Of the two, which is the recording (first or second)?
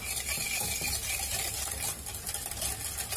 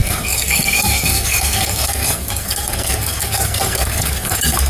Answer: first